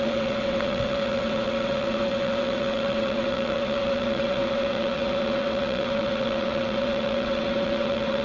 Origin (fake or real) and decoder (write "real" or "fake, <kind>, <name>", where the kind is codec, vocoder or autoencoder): fake, vocoder, WaveNeXt